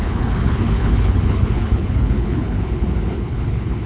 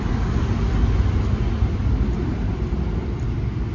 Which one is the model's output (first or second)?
first